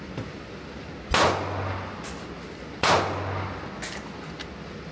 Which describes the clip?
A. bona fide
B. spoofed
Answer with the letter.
A